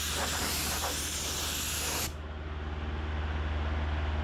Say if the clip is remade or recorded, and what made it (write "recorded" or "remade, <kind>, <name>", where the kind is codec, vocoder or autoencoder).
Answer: recorded